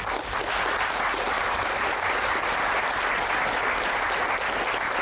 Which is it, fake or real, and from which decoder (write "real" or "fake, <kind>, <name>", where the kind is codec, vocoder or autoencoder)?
real